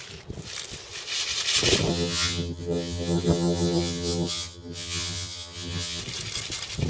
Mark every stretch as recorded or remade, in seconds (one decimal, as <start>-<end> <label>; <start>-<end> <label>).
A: 0.0-1.9 recorded; 1.9-6.0 remade; 6.0-6.9 recorded